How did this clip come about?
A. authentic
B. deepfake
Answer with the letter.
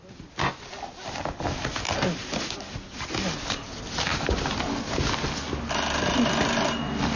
A